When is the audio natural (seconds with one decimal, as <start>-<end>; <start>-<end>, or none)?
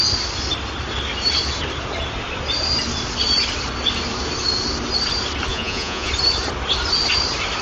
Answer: 0.0-5.5; 6.1-7.6